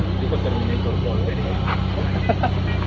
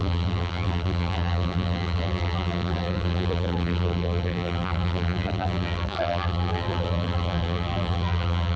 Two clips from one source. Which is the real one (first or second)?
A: first